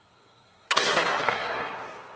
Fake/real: fake